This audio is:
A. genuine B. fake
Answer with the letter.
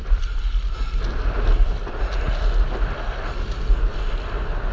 A